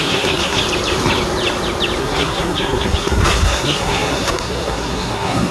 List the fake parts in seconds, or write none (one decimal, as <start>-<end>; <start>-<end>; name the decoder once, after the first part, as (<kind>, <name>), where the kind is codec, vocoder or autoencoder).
0.0-0.6 (codec, SNAC); 2.0-5.5